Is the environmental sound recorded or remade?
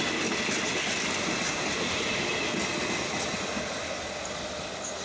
recorded